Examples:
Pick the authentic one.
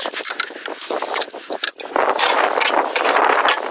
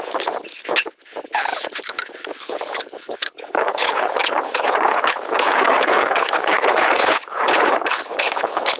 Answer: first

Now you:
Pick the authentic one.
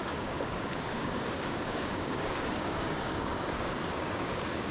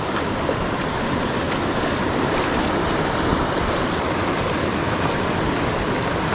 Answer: second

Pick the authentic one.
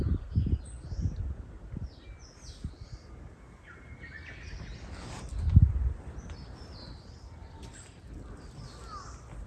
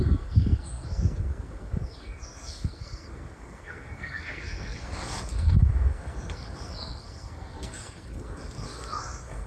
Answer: first